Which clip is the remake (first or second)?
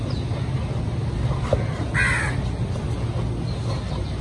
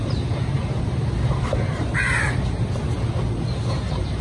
second